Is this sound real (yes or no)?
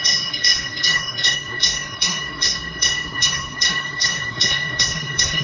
no